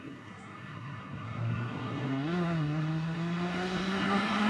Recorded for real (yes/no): no